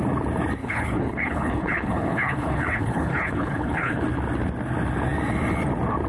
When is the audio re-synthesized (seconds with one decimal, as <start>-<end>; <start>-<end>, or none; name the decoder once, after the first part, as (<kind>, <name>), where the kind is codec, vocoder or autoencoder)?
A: 0.6-4.0 (codec, HILCodec)